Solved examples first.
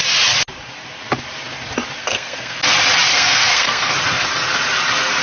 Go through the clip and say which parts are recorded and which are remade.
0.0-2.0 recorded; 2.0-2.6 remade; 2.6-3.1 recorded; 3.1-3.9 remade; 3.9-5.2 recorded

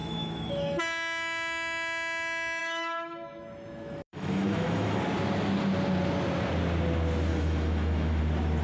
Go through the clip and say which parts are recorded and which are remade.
0.0-0.8 remade; 0.8-2.6 recorded; 2.6-5.0 remade; 5.0-7.3 recorded; 7.3-8.2 remade; 8.2-8.6 recorded

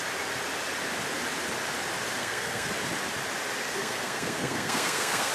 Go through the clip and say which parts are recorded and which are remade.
0.0-2.2 recorded; 2.2-2.7 remade; 2.7-3.6 recorded; 3.6-5.3 remade

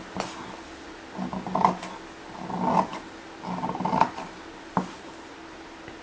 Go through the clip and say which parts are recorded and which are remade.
0.0-6.0 recorded

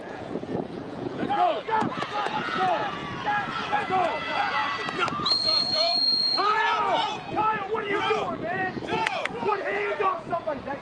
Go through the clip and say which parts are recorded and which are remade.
0.0-3.0 remade; 3.0-3.8 recorded; 3.8-4.6 remade; 4.6-5.3 recorded; 5.3-10.8 remade